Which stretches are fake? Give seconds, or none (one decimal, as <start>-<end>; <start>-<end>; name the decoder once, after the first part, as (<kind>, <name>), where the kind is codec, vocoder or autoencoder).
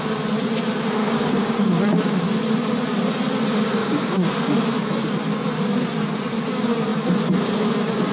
1.0-2.2 (codec, DAC); 3.8-4.3